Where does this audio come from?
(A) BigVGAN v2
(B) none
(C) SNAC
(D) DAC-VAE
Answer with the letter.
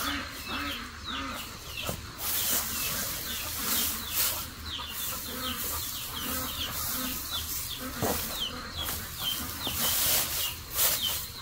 B